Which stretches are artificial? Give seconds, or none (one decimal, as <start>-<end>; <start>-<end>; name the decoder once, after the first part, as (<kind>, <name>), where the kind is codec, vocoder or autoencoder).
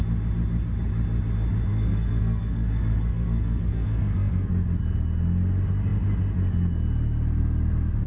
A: 1.7-4.5 (codec, SNAC)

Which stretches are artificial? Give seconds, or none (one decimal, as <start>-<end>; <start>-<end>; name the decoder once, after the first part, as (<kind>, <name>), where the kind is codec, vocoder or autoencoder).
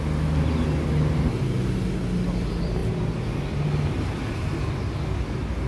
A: none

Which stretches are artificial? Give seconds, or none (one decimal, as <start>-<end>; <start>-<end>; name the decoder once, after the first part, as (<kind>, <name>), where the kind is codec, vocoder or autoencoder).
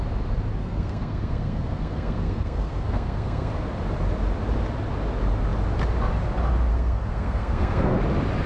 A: 0.6-3.5 (codec, SNAC); 6.7-8.0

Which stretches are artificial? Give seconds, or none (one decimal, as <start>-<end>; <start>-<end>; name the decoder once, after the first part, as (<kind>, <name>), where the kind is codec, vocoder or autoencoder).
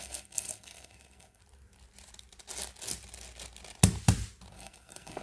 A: 0.0-1.4 (codec, SNAC); 4.5-5.2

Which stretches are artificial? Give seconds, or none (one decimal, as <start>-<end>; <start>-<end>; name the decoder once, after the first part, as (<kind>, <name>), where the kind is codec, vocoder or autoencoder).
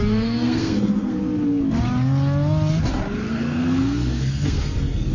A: 0.0-1.2 (codec, SNAC); 3.3-5.1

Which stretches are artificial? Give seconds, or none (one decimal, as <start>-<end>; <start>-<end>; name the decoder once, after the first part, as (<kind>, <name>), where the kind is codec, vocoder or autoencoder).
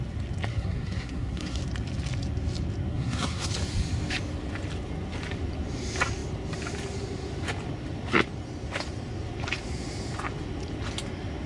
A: 0.5-1.6 (codec, SNAC); 2.9-3.5